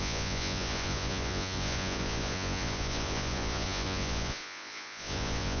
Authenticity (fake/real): fake